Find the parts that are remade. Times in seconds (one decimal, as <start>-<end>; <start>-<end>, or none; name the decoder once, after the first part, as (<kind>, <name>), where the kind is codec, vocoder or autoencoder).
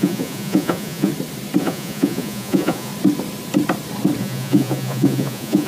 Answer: 0.0-1.1 (vocoder, Vocos); 1.6-2.9; 4.2-5.7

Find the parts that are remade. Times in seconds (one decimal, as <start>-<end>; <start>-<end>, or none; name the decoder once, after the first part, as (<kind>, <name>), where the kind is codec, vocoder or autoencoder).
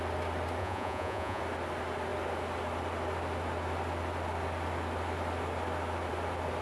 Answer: 0.6-1.4 (vocoder, Vocos)